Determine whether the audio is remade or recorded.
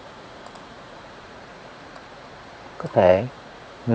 remade